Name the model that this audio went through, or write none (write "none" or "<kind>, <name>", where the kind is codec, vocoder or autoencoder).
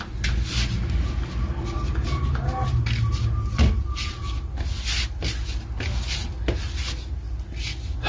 none